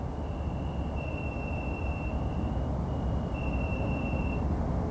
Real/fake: real